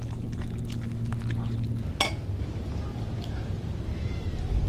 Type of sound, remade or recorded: recorded